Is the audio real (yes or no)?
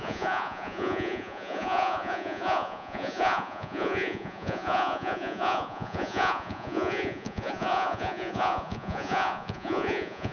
no